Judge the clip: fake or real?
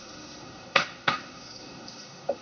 fake